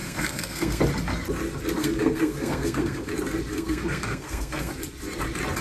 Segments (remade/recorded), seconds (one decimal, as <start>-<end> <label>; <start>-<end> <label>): 0.0-0.8 remade; 0.8-1.8 recorded; 1.8-3.1 remade; 3.1-3.5 recorded; 3.5-4.7 remade; 4.7-5.6 recorded